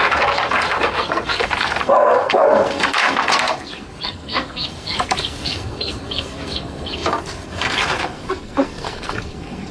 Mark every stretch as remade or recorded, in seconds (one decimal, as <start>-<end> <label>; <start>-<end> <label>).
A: 0.0-9.7 remade